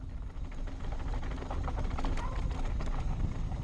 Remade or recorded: recorded